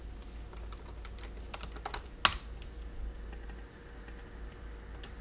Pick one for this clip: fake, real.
real